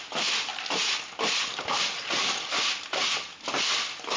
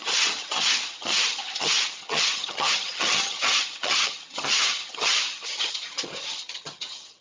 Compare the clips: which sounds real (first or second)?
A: first